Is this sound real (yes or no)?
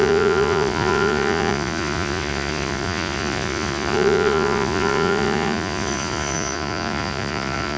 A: no